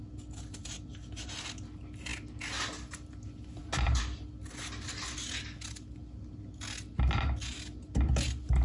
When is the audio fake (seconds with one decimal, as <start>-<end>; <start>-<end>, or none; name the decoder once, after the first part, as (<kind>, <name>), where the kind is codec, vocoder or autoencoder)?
none